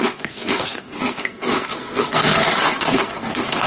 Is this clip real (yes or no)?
no